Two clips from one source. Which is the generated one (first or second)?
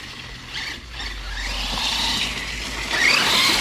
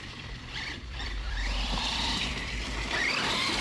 second